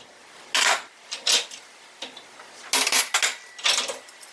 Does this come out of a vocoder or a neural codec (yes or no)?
no